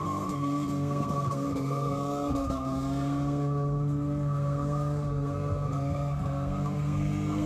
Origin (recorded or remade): remade